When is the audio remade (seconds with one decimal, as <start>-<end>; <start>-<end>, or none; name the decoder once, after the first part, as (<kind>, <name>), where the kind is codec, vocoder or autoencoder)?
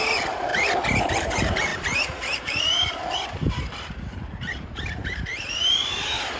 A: 0.0-0.5 (vocoder, BigVGAN v2); 1.0-5.3; 6.0-6.4